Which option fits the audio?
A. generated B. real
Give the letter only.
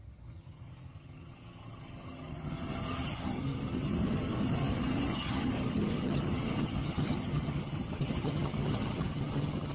A